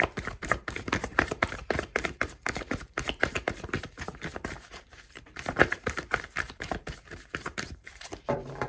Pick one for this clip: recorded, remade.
remade